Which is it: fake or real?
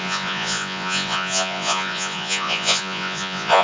fake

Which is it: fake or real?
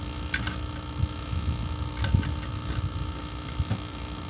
real